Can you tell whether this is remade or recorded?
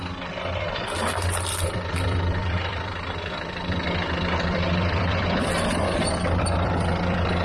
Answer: remade